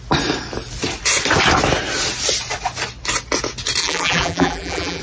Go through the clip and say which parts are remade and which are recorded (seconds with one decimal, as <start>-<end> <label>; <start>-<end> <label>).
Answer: 0.0-3.8 recorded; 3.8-5.0 remade